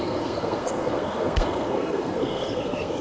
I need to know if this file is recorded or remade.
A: remade